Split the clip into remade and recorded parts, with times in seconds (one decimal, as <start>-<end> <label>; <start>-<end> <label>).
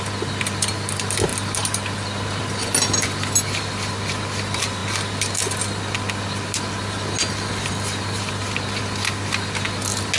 0.0-10.2 recorded